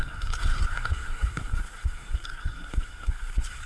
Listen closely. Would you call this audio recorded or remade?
remade